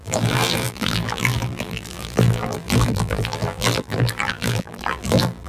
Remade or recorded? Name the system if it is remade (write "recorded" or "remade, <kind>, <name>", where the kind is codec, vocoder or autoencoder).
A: remade, vocoder, BigVGAN v2